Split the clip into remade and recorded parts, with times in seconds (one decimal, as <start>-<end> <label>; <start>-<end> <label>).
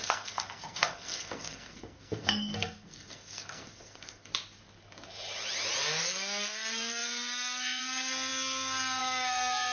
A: 0.0-4.3 remade; 4.3-6.0 recorded; 6.0-9.7 remade